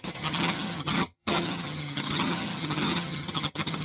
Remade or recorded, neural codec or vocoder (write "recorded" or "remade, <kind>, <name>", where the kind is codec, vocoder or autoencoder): remade, vocoder, HiFi-GAN